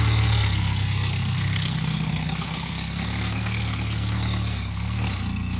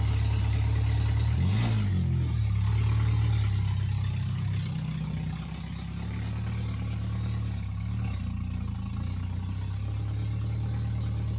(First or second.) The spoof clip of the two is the first